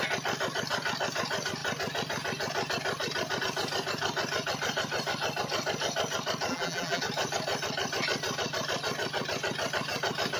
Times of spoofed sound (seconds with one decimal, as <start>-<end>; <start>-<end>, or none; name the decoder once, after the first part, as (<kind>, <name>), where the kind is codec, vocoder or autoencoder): 6.5-7.0 (vocoder, BigVGAN v2)